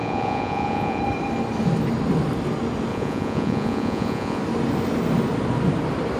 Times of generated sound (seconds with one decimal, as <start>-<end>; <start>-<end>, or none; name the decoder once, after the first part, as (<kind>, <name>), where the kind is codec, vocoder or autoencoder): 0.0-1.0 (vocoder, Vocos); 2.9-4.4